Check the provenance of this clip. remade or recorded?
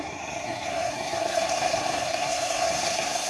remade